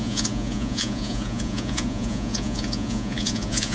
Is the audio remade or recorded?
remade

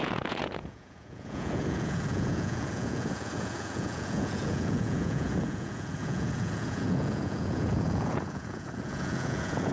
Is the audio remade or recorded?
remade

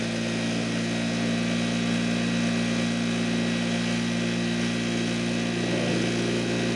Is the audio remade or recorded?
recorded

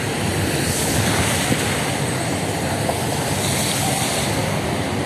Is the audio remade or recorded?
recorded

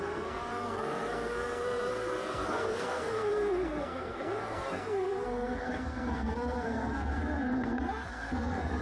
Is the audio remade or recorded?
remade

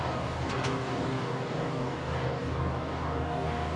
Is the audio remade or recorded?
remade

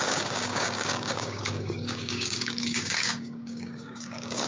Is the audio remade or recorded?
remade